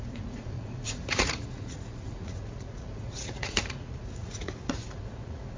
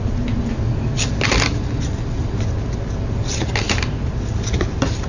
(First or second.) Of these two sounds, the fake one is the first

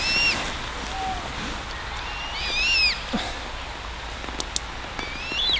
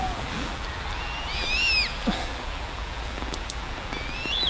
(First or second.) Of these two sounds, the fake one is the second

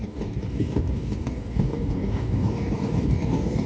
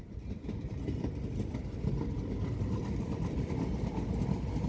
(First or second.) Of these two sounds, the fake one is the first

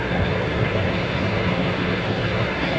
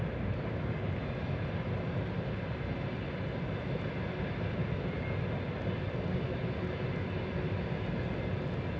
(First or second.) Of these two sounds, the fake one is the first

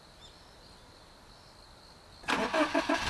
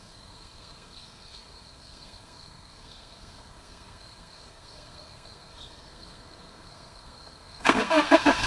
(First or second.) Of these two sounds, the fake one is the second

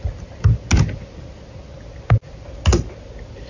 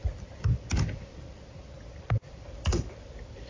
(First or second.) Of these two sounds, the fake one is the second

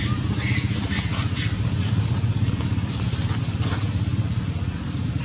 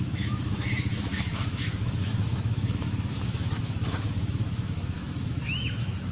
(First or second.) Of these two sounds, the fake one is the second